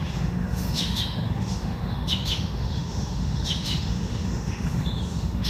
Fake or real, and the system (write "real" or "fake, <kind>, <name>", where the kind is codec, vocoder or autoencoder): fake, autoencoder, DAC-VAE